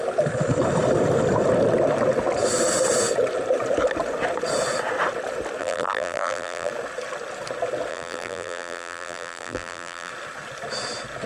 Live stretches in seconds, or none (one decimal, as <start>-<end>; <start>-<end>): 0.0-5.6; 6.7-7.9; 10.1-11.3